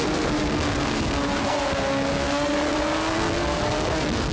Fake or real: fake